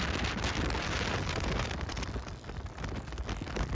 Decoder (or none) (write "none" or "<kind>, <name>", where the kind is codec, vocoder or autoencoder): none